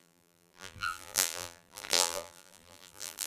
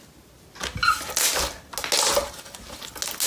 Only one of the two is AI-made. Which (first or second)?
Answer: first